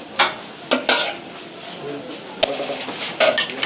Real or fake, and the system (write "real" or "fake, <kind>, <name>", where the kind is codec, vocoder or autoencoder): real